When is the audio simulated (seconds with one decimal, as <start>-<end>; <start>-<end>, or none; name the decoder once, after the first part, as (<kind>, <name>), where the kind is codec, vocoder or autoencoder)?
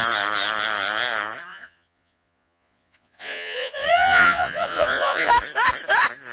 1.5-5.3 (vocoder, Vocos)